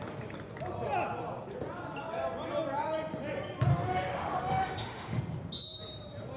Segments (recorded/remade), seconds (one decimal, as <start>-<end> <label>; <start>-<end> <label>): 0.0-3.7 recorded; 3.7-5.2 remade; 5.2-6.4 recorded